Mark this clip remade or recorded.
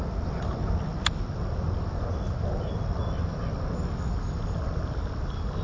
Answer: recorded